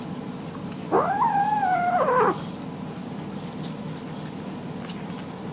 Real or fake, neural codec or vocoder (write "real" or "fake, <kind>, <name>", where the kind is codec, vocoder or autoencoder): real